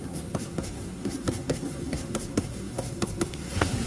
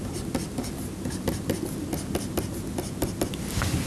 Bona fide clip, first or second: second